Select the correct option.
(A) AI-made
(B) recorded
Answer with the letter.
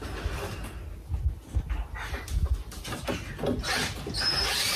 B